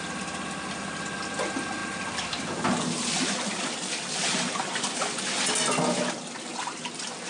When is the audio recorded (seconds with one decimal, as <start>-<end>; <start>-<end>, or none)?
0.0-7.3